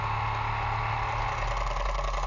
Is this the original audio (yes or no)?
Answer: yes